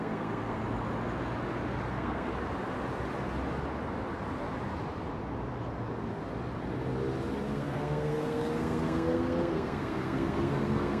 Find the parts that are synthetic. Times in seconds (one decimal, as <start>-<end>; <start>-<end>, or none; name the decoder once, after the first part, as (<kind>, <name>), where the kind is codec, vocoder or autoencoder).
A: 0.0-0.6 (codec, SNAC); 1.9-2.3; 7.4-11.0